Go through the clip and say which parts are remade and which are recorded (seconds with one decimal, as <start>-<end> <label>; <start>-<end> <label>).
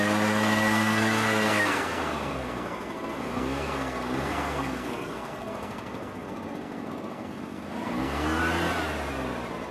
0.0-8.4 remade; 8.4-9.7 recorded